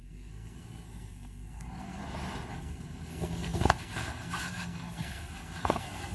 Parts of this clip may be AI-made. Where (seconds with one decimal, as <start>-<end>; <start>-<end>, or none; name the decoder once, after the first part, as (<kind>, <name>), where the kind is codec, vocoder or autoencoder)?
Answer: 0.0-2.0 (codec, SNAC); 2.5-6.1